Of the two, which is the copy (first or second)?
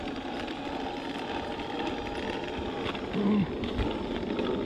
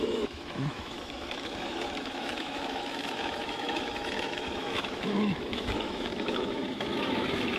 second